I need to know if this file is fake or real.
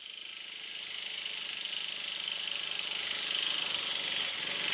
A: fake